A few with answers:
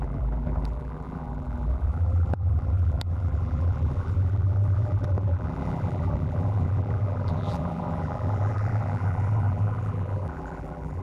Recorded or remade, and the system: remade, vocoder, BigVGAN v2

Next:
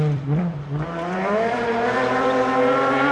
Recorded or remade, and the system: remade, vocoder, BigVGAN v2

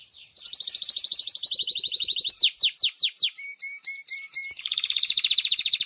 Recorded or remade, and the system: remade, vocoder, BigVGAN v2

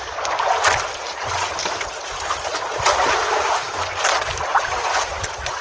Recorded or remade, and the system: remade, vocoder, BigVGAN v2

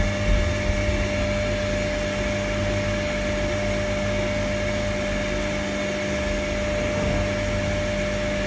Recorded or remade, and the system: recorded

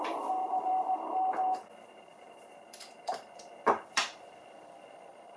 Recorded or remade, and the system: remade, vocoder, BigVGAN v2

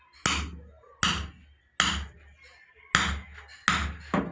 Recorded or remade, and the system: recorded